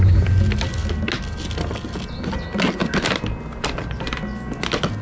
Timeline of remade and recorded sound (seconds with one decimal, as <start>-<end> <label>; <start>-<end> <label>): 0.0-5.0 recorded

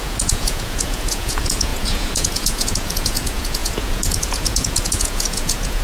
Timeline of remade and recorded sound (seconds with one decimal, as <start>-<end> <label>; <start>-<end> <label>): 0.0-5.8 remade

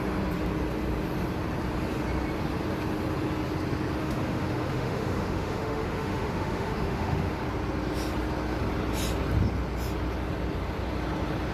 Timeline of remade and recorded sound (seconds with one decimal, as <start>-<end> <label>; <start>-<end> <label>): 0.0-4.0 recorded; 4.0-7.4 remade; 7.4-11.5 recorded